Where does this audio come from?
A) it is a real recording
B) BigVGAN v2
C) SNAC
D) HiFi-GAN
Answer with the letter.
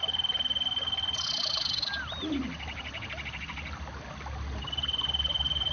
A